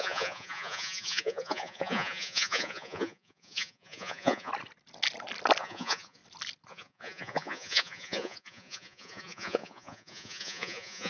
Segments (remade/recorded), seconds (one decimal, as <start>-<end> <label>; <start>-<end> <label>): 0.0-4.5 remade; 4.5-5.6 recorded; 5.6-6.2 remade; 6.2-6.7 recorded; 6.7-11.1 remade